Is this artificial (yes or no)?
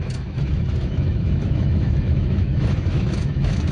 yes